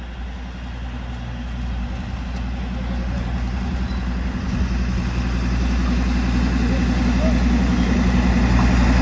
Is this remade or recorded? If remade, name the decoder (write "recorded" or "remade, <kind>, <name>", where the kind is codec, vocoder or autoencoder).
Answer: recorded